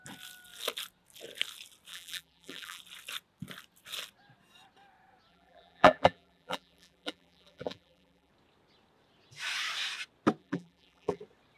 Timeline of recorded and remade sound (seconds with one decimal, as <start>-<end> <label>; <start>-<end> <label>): 0.0-1.9 recorded; 1.9-2.8 remade; 2.8-5.3 recorded; 5.3-8.3 remade; 8.3-10.4 recorded; 10.4-11.2 remade; 11.2-11.6 recorded

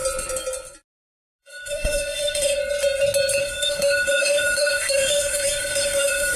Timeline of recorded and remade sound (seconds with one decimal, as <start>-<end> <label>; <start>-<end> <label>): 0.0-1.4 recorded; 1.4-2.6 remade; 2.6-3.4 recorded; 3.4-6.4 remade

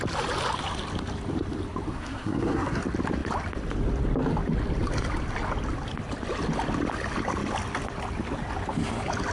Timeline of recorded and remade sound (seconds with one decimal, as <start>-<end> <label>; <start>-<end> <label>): 0.0-1.9 recorded; 1.9-2.8 remade; 2.8-9.3 recorded

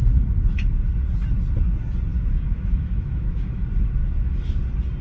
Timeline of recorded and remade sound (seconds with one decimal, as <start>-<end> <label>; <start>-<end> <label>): 0.0-2.1 recorded; 2.1-3.6 remade; 3.6-4.0 recorded; 4.0-4.5 remade; 4.5-5.0 recorded